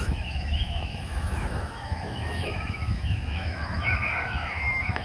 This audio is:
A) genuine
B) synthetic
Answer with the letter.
B